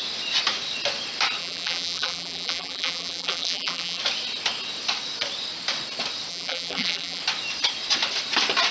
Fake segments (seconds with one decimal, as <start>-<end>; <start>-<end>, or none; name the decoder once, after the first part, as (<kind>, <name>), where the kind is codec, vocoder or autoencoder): 1.4-4.0 (vocoder, BigVGAN v2); 6.3-7.2

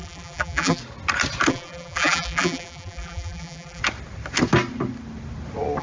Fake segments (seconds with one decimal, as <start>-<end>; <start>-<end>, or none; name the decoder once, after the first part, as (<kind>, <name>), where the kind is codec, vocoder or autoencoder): 0.0-0.8 (vocoder, BigVGAN v2); 1.5-3.8

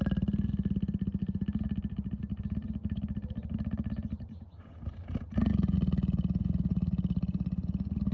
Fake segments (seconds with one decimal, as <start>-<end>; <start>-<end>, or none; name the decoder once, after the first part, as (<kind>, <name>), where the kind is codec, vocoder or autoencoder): 1.2-5.5 (vocoder, BigVGAN v2); 6.7-8.1

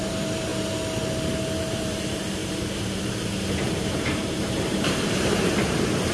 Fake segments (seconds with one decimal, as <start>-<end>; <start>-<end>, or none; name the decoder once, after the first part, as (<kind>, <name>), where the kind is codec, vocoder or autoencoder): 0.0-0.5 (vocoder, BigVGAN v2); 1.6-6.1

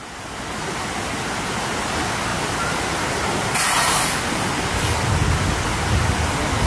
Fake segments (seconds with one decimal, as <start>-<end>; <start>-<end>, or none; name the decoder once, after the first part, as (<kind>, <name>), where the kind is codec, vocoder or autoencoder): 2.3-4.7 (vocoder, BigVGAN v2)

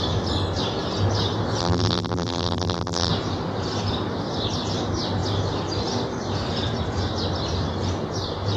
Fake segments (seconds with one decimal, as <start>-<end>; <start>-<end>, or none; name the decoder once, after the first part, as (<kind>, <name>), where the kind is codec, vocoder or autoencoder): 1.6-3.1 (vocoder, BigVGAN v2)

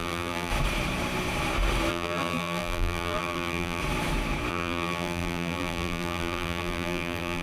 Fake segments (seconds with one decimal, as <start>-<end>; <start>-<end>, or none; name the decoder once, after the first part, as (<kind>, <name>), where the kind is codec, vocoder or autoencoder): 0.0-0.5 (vocoder, BigVGAN v2); 1.9-3.8; 4.5-7.4

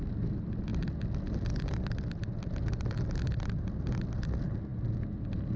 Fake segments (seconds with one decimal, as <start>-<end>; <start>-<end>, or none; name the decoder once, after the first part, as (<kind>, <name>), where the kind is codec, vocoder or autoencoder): none